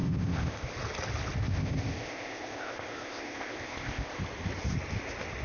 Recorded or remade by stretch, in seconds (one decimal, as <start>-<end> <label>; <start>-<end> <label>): 0.0-0.7 remade; 0.7-1.4 recorded; 1.4-4.2 remade; 4.2-5.4 recorded